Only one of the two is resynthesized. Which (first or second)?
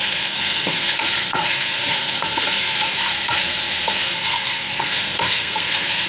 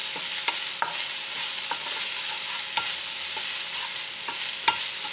first